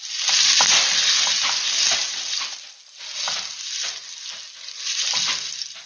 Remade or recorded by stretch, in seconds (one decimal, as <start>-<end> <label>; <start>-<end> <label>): 0.0-5.9 recorded